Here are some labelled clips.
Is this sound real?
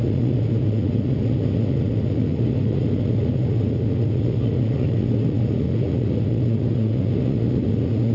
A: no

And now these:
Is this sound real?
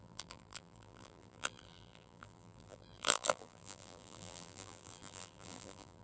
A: no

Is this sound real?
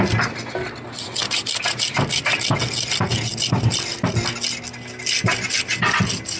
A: yes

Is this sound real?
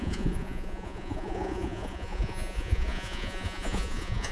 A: no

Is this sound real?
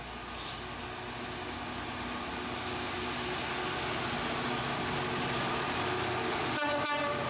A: yes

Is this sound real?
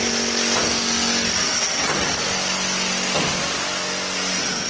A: yes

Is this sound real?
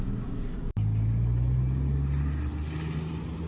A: yes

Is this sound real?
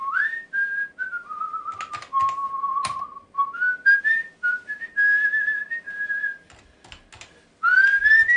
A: yes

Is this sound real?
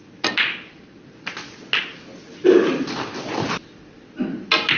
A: yes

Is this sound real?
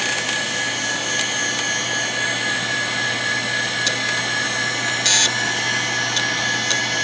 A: yes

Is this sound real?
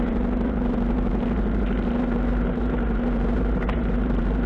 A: no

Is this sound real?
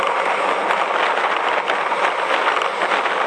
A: yes